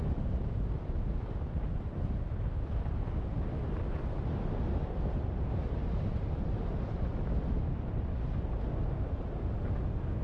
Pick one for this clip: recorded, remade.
recorded